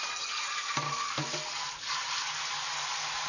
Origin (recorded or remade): recorded